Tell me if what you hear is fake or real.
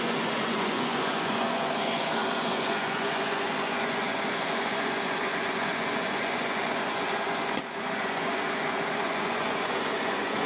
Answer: fake